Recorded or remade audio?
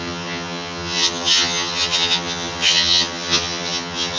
remade